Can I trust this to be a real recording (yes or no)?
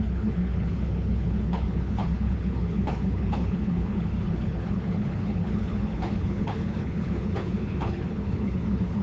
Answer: no